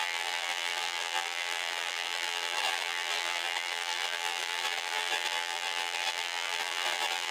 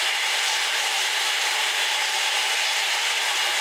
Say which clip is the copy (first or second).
first